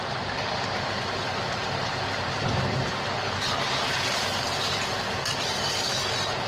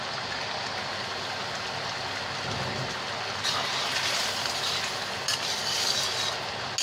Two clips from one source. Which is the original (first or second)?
second